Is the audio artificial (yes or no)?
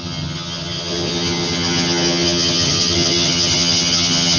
yes